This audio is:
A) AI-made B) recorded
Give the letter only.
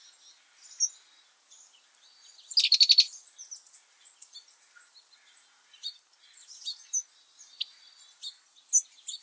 B